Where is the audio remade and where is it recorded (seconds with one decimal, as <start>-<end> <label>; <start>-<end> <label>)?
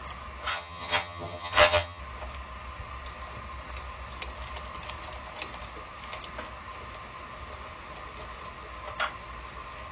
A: 0.0-0.5 recorded; 0.5-2.0 remade; 2.0-9.9 recorded